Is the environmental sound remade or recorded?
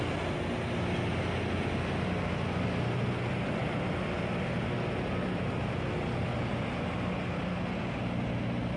recorded